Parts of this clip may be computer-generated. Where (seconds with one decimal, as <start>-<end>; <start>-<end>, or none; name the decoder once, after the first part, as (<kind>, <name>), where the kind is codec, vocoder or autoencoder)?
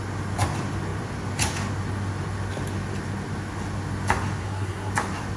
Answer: 4.4-4.9 (codec, SNAC)